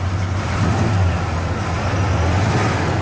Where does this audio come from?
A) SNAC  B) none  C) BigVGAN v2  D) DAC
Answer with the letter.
B